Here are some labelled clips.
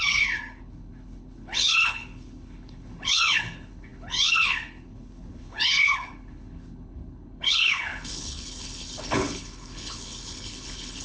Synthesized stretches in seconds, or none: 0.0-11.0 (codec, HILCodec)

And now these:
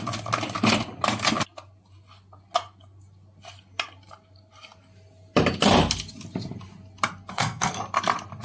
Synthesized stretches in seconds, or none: 7.3-7.8 (codec, SNAC)

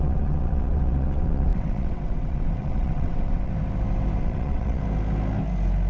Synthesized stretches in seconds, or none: 0.0-3.5 (vocoder, WaveNeXt); 4.2-4.8

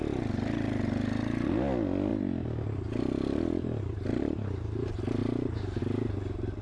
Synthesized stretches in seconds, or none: none

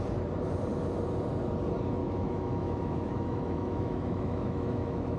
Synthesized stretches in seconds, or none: 2.0-5.2 (autoencoder, DAC-VAE)

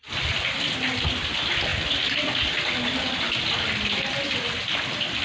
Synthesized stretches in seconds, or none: none

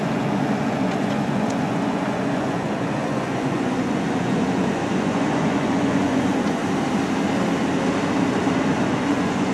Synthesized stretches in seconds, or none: 0.0-6.6 (vocoder, Vocos); 8.8-9.5

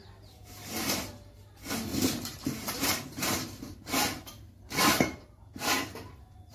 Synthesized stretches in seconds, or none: 1.9-5.8 (vocoder, BigVGAN v2)